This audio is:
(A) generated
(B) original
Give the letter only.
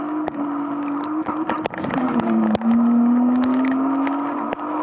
B